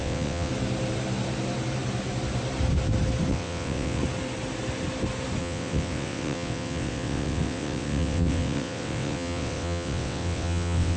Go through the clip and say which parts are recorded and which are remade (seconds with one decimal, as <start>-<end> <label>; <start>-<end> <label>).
0.0-0.5 remade; 0.5-3.3 recorded; 3.3-4.0 remade; 4.0-5.4 recorded; 5.4-11.0 remade